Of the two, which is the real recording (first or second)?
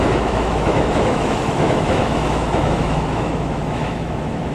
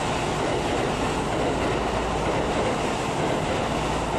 second